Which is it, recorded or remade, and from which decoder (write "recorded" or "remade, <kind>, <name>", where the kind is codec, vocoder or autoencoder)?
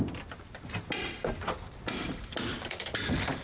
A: recorded